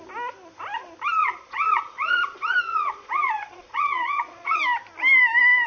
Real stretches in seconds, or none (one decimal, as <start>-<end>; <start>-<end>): 0.0-1.2; 4.6-5.7